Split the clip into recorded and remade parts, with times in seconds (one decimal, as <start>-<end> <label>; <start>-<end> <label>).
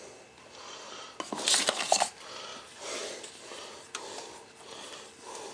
0.0-5.5 recorded